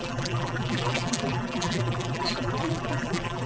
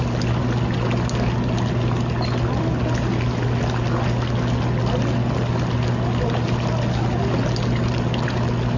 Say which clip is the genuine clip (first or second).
second